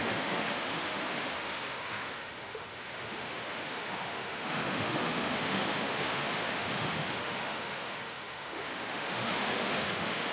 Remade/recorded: remade